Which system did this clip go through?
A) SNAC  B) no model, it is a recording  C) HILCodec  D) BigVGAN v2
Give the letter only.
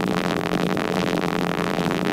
D